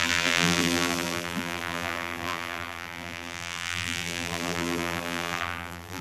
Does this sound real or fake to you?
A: fake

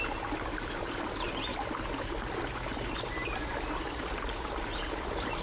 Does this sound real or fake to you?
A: real